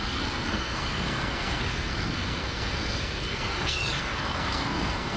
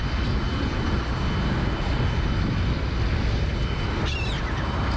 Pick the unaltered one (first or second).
second